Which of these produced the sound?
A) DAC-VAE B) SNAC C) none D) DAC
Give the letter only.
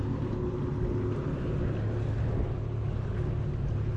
C